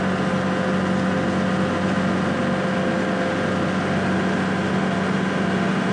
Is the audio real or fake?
real